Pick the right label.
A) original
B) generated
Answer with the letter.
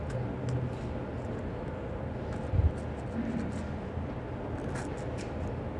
A